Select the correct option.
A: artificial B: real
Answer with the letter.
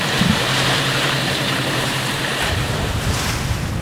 A